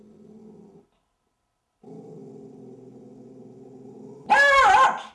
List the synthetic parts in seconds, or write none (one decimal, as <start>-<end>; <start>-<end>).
none

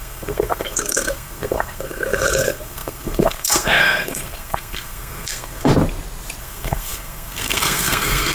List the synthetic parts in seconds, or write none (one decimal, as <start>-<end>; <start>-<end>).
0.0-5.7; 6.4-8.3

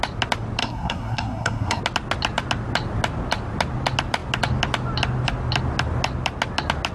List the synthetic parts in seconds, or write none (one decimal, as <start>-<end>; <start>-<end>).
0.6-1.8

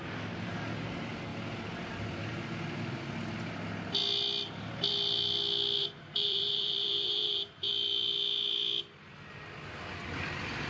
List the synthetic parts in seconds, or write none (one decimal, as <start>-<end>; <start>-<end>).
1.3-1.9; 5.8-7.7

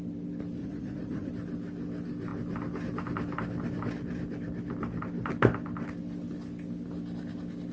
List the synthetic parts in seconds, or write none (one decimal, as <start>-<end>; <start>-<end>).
0.6-1.3